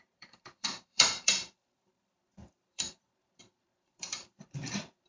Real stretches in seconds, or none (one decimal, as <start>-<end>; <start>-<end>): none